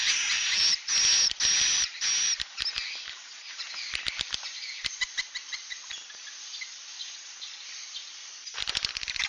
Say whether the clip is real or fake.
real